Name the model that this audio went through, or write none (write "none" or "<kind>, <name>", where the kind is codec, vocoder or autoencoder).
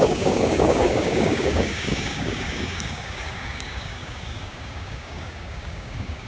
codec, DAC